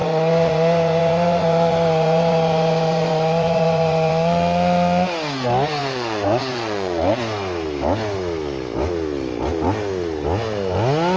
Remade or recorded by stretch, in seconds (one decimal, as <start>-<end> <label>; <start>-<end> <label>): 0.0-4.1 remade; 4.1-5.8 recorded; 5.8-7.2 remade; 7.2-11.2 recorded